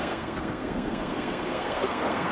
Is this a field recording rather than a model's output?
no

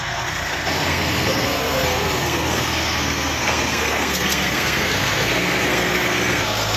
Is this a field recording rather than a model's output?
no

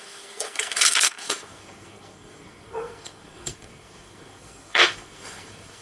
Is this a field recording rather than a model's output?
no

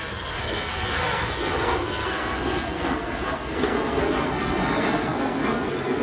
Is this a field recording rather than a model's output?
no